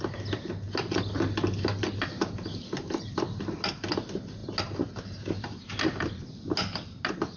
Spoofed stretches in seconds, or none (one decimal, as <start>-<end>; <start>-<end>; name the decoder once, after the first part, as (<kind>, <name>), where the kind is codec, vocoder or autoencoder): none